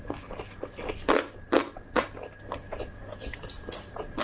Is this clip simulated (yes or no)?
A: no